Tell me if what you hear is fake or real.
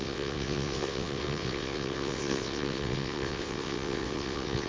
fake